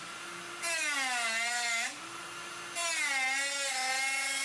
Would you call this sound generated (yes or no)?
no